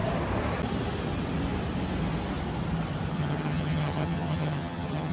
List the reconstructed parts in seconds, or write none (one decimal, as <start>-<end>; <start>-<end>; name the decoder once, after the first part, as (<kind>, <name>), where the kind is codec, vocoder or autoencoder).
3.1-5.1 (vocoder, HiFi-GAN)